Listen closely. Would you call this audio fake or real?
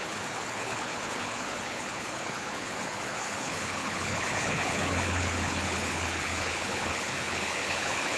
fake